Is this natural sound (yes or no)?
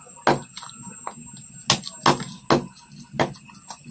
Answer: yes